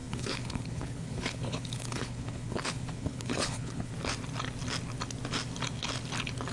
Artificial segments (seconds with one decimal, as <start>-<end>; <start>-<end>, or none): 0.0-3.9